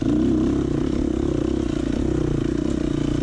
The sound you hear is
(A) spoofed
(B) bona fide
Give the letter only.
B